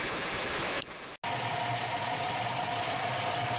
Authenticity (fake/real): real